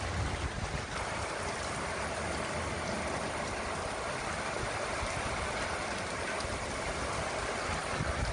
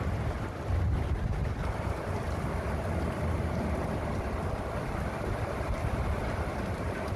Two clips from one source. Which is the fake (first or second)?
second